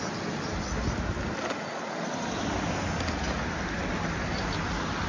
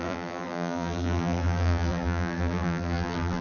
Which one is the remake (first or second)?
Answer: second